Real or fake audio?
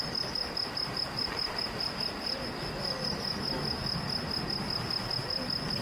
real